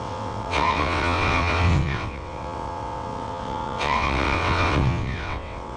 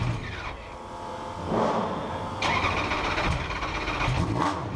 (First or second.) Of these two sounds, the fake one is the first